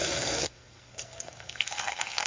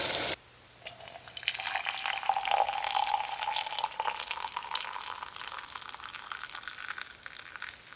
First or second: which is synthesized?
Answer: first